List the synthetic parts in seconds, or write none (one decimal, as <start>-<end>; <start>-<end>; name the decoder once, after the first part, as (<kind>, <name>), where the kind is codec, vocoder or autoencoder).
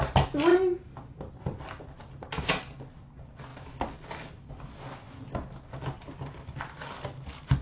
none